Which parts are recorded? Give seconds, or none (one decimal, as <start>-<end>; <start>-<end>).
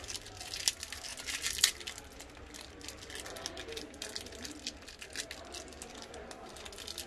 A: 0.0-7.1